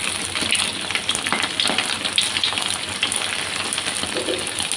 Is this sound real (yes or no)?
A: yes